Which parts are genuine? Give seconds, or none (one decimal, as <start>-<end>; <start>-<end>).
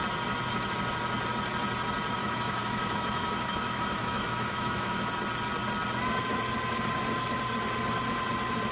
0.0-2.2; 5.1-8.7